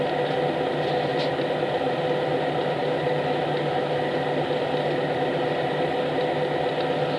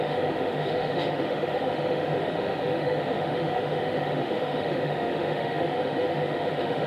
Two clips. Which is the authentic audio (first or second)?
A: first